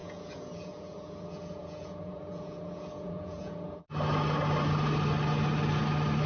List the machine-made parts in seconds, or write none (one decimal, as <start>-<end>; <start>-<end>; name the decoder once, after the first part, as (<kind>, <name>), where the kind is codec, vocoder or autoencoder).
0.0-3.8 (vocoder, Vocos)